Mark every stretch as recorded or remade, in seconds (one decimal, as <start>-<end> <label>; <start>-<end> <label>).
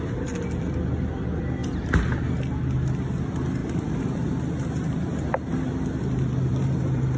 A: 0.0-3.6 recorded; 3.6-4.1 remade; 4.1-6.5 recorded; 6.5-7.2 remade